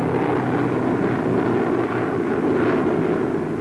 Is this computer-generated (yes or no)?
no